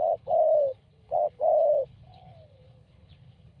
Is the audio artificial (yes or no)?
yes